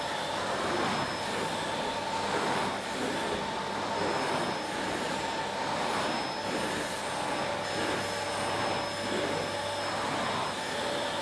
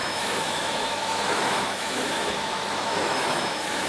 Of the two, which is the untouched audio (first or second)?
first